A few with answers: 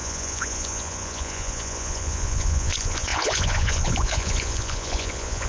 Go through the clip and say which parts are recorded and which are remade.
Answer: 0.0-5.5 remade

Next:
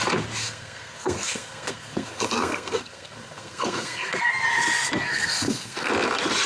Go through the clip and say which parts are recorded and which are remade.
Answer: 0.0-0.4 recorded; 0.4-4.2 remade; 4.2-5.1 recorded; 5.1-5.9 remade; 5.9-6.5 recorded